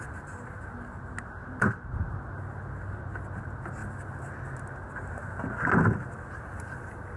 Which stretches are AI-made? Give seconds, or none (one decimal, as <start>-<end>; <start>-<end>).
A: none